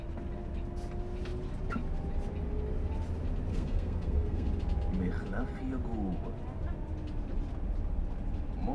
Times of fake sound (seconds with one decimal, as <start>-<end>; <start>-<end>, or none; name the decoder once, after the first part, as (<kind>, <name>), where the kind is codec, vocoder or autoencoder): 3.5-4.5 (codec, SNAC)